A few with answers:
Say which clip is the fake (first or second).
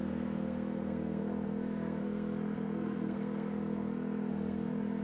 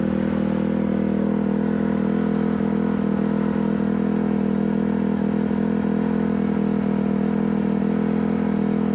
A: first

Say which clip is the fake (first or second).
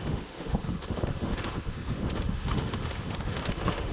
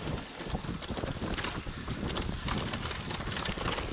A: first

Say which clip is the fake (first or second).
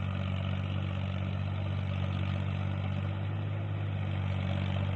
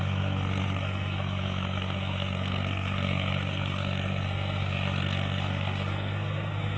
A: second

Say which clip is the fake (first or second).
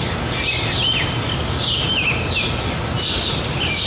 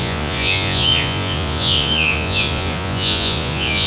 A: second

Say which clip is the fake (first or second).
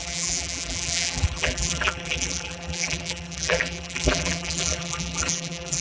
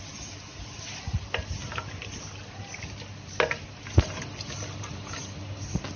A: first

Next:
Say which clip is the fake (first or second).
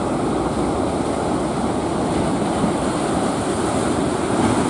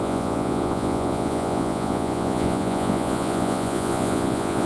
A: second